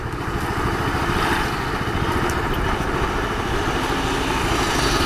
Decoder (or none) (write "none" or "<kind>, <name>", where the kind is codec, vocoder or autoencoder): none